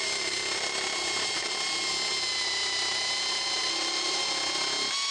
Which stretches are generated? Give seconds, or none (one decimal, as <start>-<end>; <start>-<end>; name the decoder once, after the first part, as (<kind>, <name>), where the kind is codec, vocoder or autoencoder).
3.6-4.2 (vocoder, BigVGAN v2)